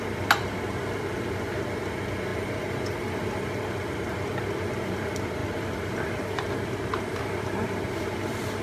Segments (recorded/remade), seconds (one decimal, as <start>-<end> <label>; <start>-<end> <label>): 0.0-2.3 recorded; 2.3-3.4 remade; 3.4-8.6 recorded